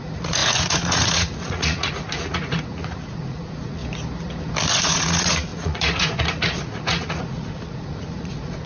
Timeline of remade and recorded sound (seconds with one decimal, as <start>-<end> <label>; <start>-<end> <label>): 0.0-3.8 remade; 3.8-4.7 recorded; 4.7-8.7 remade